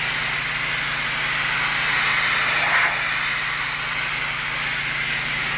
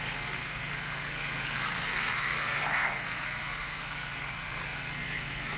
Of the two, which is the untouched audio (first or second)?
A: first